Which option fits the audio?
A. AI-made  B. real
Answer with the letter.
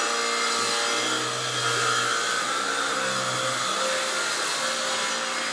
B